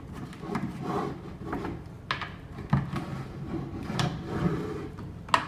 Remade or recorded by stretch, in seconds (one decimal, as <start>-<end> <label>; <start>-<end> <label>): 0.0-5.5 recorded